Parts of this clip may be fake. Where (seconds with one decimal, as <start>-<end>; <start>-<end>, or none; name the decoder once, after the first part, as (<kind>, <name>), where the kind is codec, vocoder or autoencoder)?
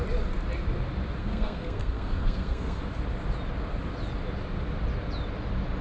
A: 1.2-2.8 (codec, SNAC)